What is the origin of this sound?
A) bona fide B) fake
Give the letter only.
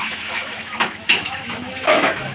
B